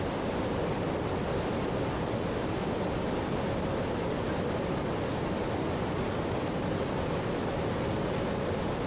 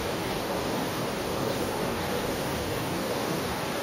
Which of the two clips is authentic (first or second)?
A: first